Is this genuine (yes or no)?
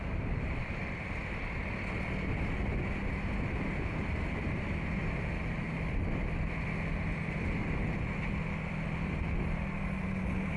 yes